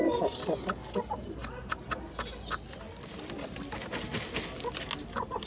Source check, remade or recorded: recorded